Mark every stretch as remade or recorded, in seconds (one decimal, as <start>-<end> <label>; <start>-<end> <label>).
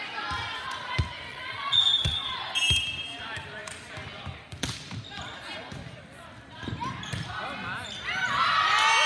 0.0-1.3 recorded; 1.3-2.3 remade; 2.3-9.1 recorded